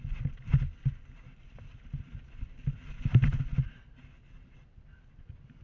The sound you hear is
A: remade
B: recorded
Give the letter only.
B